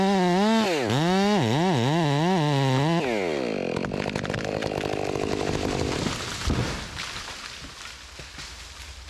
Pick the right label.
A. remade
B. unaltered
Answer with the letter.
B